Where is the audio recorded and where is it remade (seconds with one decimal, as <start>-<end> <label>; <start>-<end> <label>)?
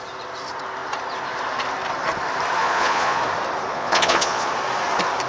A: 0.0-2.6 recorded; 2.6-3.2 remade; 3.2-3.7 recorded; 3.7-4.5 remade; 4.5-5.3 recorded